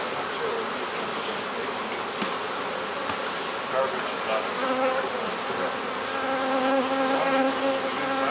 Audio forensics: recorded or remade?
recorded